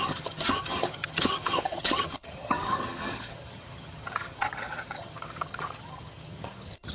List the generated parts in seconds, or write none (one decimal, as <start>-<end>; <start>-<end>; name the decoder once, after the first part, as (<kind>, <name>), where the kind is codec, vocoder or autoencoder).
0.0-6.9 (vocoder, HiFi-GAN)